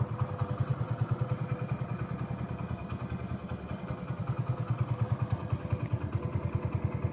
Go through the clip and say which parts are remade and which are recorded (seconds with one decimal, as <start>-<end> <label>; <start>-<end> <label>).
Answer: 0.0-7.1 recorded